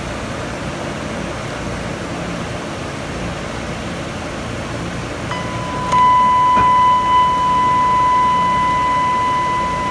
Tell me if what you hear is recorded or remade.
recorded